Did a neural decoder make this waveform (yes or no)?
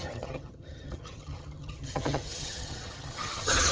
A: yes